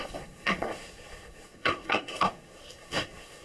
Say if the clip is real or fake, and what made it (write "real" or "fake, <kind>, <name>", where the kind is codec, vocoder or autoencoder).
fake, codec, SNAC